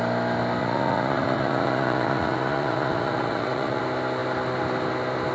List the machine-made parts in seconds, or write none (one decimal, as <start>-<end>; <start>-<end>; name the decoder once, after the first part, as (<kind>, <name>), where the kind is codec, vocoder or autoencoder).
0.6-3.8 (vocoder, Vocos)